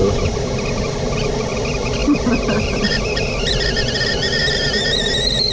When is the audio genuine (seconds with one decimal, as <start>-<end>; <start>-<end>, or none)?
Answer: 1.4-2.0